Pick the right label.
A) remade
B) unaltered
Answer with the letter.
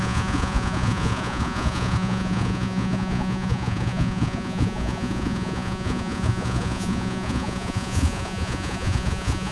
A